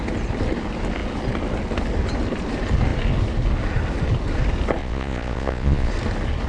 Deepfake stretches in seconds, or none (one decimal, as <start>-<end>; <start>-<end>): 4.8-5.9